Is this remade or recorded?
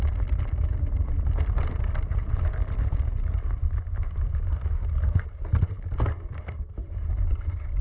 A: recorded